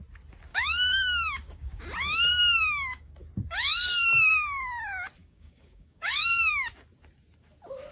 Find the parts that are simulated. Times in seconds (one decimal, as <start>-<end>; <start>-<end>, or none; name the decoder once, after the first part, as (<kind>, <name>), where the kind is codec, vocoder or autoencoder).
0.5-1.8 (codec, DAC); 2.3-3.1; 5.2-6.5